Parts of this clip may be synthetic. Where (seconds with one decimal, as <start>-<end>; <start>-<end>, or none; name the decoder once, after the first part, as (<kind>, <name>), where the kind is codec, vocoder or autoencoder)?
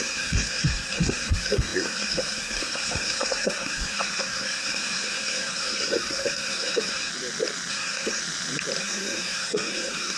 0.0-7.1 (codec, SNAC); 7.7-8.2; 8.8-10.2